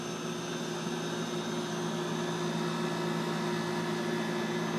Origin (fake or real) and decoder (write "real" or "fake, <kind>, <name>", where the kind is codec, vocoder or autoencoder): real